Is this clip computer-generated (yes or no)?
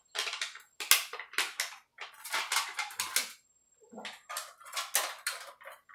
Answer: no